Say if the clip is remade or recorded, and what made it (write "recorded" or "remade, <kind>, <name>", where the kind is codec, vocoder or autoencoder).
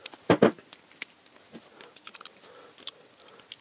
recorded